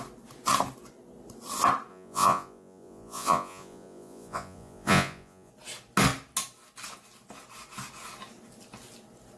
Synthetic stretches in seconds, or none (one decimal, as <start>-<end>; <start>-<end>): 1.9-5.5